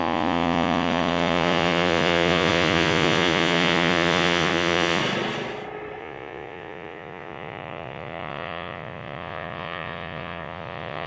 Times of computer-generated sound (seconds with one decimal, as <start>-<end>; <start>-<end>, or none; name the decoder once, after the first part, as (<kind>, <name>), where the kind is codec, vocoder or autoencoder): 0.0-5.0 (vocoder, Vocos); 6.0-11.1